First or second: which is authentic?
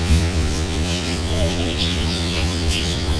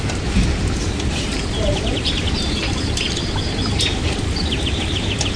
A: second